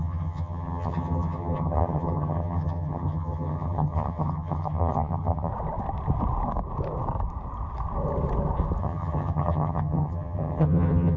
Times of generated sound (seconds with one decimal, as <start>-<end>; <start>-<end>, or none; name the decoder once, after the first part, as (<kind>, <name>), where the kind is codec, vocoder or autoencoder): 0.0-5.5 (vocoder, HiFi-GAN); 8.8-11.2